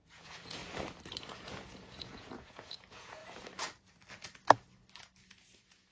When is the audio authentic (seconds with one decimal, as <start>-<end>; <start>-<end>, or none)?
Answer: 0.6-1.2; 3.2-5.9